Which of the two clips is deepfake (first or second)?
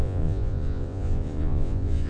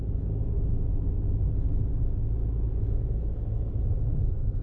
first